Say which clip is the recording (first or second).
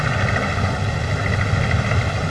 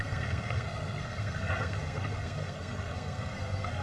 first